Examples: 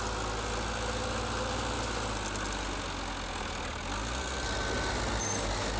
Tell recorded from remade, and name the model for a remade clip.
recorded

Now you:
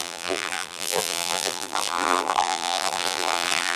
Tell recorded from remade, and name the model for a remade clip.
remade, vocoder, BigVGAN v2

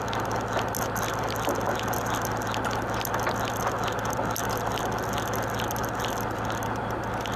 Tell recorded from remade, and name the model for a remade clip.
recorded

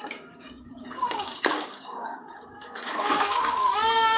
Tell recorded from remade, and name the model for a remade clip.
remade, codec, DAC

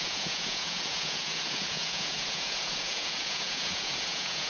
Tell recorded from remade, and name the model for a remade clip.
remade, vocoder, Vocos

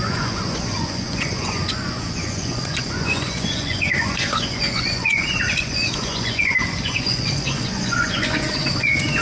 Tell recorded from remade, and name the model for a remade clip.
remade, vocoder, Vocos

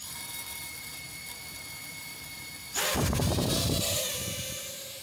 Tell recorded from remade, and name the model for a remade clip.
remade, vocoder, BigVGAN v2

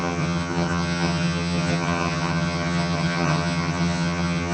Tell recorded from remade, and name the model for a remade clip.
remade, vocoder, HiFi-GAN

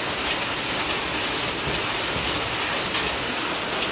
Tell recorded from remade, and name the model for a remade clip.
recorded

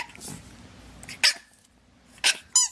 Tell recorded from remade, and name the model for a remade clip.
recorded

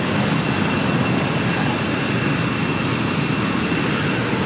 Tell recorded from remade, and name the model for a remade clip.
recorded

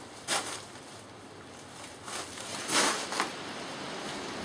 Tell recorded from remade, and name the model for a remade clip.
recorded